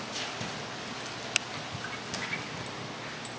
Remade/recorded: recorded